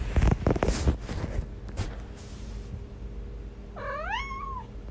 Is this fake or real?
real